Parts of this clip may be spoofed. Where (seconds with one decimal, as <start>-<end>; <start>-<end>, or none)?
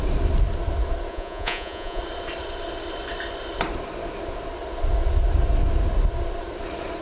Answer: 1.1-2.0